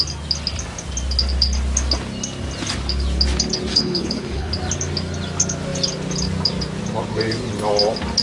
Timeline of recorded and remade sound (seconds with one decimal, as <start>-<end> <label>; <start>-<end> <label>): 0.0-3.7 recorded; 3.7-4.5 remade; 4.5-8.2 recorded